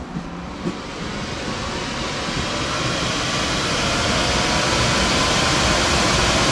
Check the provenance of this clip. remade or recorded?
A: recorded